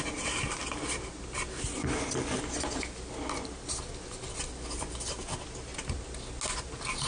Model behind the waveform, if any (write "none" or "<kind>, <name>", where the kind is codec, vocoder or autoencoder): none